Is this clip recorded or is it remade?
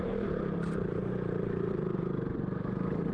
remade